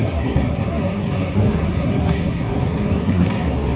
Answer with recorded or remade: remade